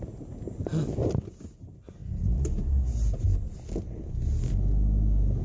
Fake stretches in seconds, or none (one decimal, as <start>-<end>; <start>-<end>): none

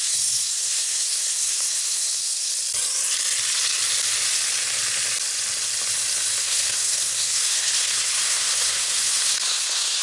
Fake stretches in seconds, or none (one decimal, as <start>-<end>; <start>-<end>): 0.0-2.5; 6.4-10.0

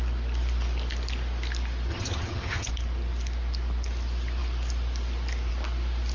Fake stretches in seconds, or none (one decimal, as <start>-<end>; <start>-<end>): 1.9-2.7

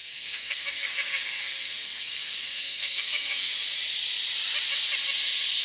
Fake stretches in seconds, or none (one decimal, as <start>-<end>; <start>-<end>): 0.0-3.5